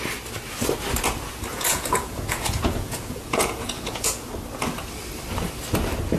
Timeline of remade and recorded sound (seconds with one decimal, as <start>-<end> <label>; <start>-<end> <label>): 0.0-1.5 recorded; 1.5-4.3 remade; 4.3-6.2 recorded